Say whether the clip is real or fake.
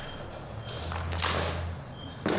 real